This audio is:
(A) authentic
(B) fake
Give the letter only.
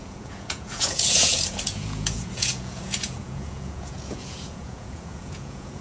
B